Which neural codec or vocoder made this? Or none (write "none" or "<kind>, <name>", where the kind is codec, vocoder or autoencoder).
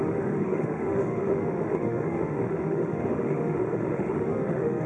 autoencoder, DAC-VAE